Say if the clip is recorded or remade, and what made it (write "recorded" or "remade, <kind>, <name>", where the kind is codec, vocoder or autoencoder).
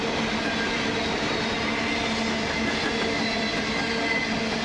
recorded